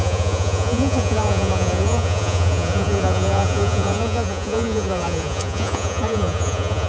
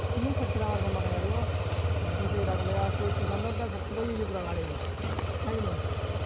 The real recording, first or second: second